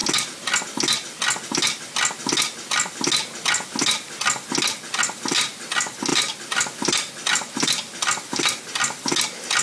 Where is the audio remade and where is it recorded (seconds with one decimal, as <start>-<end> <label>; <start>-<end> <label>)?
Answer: 0.0-6.1 recorded; 6.1-8.6 remade; 8.6-9.6 recorded

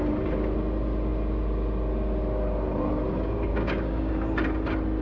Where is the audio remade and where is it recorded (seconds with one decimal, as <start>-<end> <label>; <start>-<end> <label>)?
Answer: 0.0-3.5 recorded; 3.5-4.1 remade; 4.1-5.0 recorded

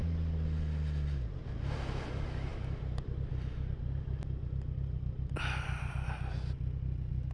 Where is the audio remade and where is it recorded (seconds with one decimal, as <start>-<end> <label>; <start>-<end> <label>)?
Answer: 0.0-7.3 recorded

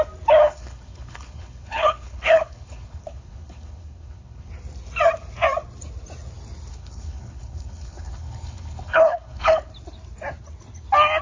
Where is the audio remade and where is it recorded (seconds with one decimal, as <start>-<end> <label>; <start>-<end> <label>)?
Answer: 0.0-0.4 recorded; 0.4-4.5 remade; 4.5-6.7 recorded; 6.7-9.7 remade; 9.7-11.2 recorded

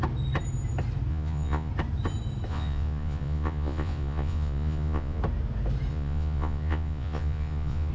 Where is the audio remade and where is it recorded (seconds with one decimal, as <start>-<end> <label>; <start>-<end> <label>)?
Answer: 0.0-1.1 recorded; 1.1-1.7 remade; 1.7-2.5 recorded; 2.5-5.2 remade; 5.2-5.9 recorded; 5.9-7.9 remade

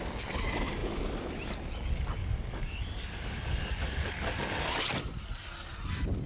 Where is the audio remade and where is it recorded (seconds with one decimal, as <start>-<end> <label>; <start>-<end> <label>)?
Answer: 0.0-2.2 recorded; 2.2-4.9 remade; 4.9-6.3 recorded

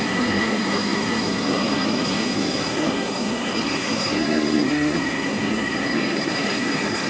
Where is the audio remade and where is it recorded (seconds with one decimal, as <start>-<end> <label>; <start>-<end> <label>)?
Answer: 0.0-7.1 remade

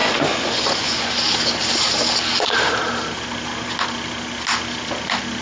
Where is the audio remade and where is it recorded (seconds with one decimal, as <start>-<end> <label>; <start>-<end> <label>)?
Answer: 0.0-1.1 remade; 1.1-5.4 recorded